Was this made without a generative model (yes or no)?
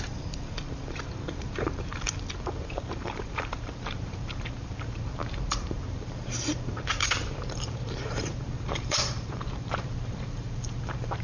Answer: no